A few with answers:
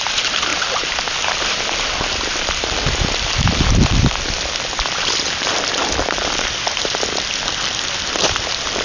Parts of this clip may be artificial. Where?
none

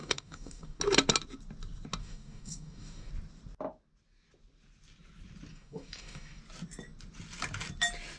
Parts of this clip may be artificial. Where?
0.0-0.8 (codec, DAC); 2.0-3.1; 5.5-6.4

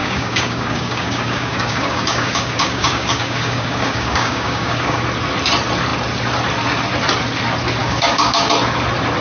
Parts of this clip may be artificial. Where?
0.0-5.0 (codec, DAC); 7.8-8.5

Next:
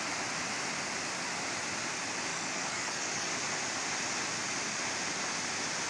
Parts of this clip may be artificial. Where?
2.3-3.3 (codec, DAC)